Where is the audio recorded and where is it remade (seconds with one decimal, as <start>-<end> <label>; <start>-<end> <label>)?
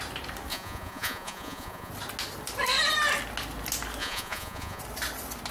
0.0-0.5 recorded; 0.5-1.9 remade; 1.9-4.0 recorded; 4.0-4.8 remade; 4.8-5.5 recorded